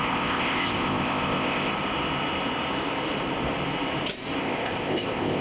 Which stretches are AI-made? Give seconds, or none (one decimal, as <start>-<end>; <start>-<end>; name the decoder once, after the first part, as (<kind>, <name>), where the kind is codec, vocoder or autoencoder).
0.0-1.7 (codec, ZipCodec); 4.4-5.4